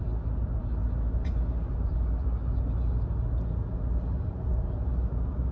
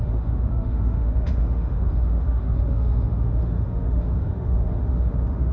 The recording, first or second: first